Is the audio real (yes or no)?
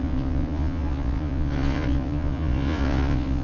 no